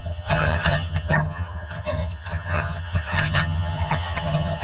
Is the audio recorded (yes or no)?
no